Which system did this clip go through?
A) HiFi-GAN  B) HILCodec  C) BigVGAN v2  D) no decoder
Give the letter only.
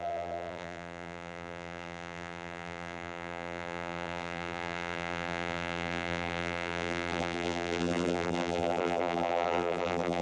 C